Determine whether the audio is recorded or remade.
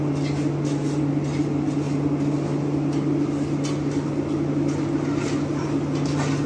recorded